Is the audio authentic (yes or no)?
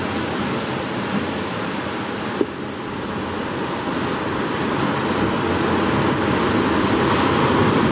yes